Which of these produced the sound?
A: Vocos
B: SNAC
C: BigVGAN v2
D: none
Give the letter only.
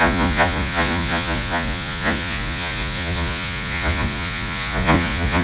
A